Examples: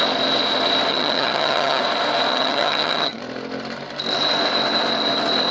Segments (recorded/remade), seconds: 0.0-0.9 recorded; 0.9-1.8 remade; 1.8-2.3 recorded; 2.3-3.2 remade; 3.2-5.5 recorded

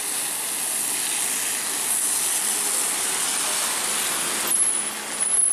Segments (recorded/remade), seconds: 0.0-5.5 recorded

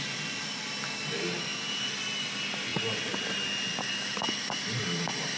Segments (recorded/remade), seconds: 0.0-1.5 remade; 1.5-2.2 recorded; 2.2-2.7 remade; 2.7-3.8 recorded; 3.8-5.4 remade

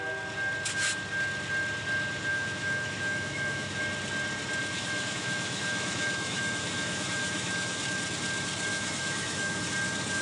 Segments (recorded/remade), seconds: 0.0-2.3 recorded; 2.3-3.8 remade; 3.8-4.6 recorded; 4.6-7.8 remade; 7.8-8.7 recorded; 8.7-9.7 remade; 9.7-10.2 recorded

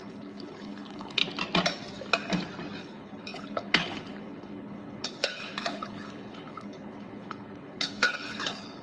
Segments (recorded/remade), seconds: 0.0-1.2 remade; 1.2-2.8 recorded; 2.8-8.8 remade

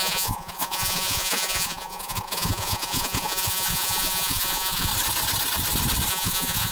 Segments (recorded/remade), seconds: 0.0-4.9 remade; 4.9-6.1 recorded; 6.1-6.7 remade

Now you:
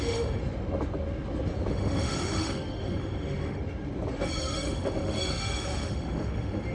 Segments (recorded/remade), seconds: 0.0-0.4 remade; 0.4-1.7 recorded; 1.7-3.6 remade; 3.6-4.4 recorded; 4.4-6.7 remade

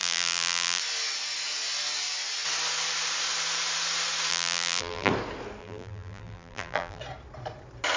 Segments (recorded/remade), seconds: 0.0-0.8 remade; 0.8-4.3 recorded; 4.3-5.1 remade; 5.1-5.6 recorded; 5.6-7.0 remade; 7.0-8.0 recorded